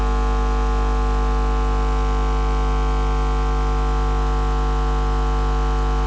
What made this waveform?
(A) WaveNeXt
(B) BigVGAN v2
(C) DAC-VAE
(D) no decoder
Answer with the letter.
D